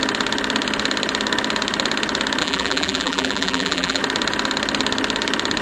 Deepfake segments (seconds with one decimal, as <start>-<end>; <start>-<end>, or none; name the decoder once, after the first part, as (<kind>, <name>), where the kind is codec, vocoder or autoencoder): 2.4-4.0 (vocoder, BigVGAN v2)